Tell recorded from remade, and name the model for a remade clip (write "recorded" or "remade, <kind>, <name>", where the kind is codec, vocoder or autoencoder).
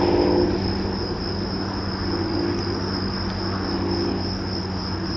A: recorded